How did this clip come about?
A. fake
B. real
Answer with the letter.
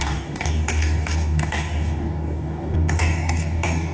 A